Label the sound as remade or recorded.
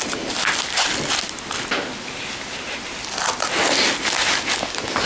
recorded